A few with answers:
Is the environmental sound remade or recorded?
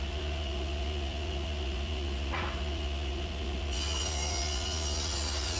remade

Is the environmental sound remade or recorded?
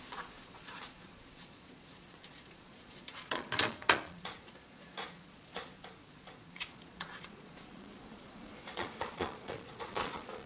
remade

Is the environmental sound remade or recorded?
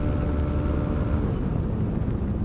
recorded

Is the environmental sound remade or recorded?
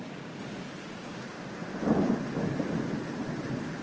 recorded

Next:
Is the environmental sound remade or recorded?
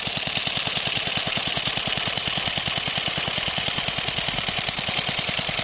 recorded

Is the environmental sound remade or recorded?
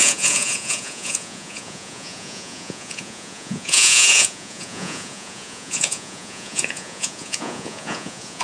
remade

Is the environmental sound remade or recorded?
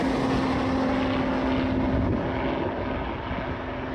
recorded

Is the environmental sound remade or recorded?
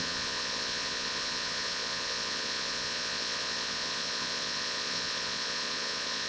remade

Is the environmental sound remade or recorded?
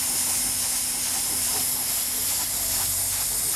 recorded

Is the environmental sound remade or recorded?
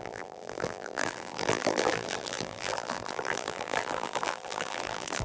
remade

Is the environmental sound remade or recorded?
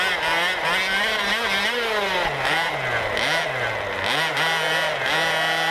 recorded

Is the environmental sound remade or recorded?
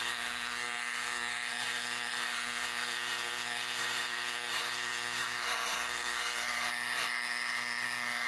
remade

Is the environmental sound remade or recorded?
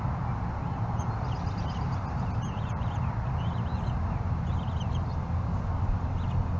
recorded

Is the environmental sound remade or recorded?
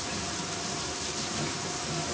recorded